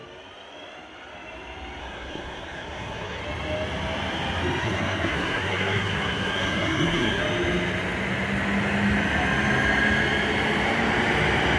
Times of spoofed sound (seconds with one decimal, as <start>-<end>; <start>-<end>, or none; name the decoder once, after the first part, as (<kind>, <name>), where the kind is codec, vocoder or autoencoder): 1.8-3.2 (codec, SNAC); 4.6-7.2